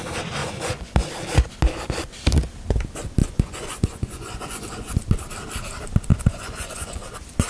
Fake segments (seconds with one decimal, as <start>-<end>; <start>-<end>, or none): 0.4-1.1; 3.2-5.0; 6.1-7.0

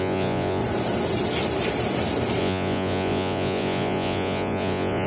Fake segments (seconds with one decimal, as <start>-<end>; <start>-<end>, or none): 0.0-0.6; 2.4-5.1

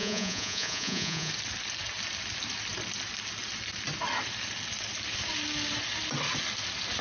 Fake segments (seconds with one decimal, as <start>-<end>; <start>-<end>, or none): 0.0-1.3